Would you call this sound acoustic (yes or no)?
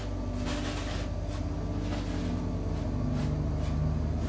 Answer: yes